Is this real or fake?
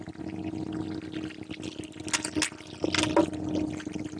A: real